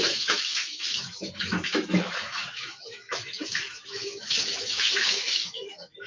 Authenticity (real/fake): fake